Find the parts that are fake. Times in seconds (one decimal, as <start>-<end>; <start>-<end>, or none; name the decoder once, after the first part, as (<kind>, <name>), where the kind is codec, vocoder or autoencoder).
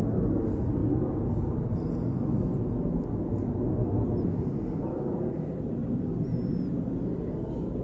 none